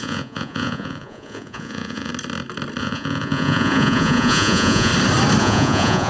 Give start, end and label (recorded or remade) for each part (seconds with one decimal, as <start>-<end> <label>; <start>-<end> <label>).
0.0-2.1 remade; 2.1-2.8 recorded; 2.8-4.9 remade; 4.9-5.4 recorded; 5.4-6.1 remade